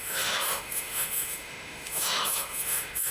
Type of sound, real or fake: fake